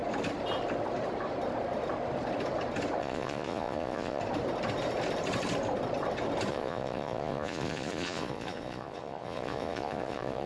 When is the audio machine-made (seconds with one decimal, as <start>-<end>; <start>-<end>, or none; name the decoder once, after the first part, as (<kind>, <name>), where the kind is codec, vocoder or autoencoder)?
3.0-4.2 (vocoder, Vocos); 6.5-10.5

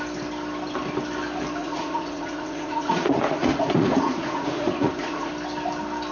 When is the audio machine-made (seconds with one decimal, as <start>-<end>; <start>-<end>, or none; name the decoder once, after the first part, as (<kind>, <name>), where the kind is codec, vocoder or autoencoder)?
1.6-5.3 (vocoder, Vocos)

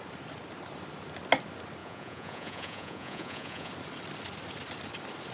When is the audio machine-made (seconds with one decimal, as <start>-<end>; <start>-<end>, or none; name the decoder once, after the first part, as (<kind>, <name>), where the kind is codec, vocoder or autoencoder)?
1.8-3.7 (vocoder, Vocos)

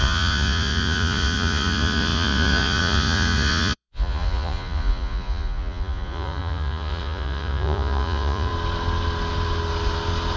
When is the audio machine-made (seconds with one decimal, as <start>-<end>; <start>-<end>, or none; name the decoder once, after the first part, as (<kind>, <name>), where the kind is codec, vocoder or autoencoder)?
0.0-8.5 (vocoder, Vocos)

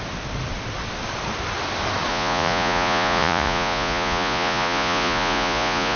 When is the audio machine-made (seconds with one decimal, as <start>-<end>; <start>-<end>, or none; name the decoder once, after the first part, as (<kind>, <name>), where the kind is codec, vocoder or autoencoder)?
2.1-6.0 (vocoder, Vocos)